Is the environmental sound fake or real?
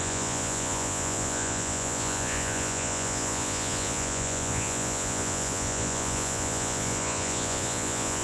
fake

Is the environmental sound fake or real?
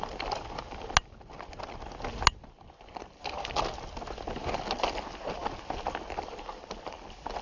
real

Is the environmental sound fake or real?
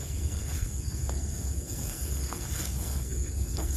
fake